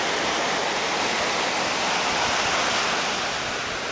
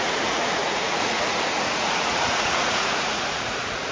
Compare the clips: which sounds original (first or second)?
first